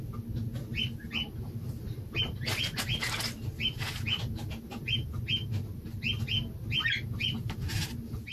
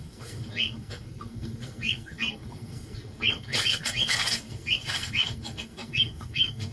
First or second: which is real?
first